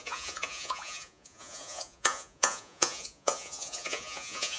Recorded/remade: remade